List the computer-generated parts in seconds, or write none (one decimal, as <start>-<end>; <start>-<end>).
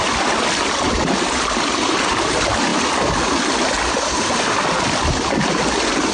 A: none